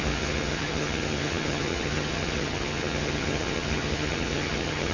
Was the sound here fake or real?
fake